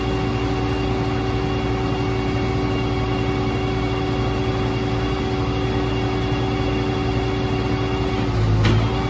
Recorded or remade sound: recorded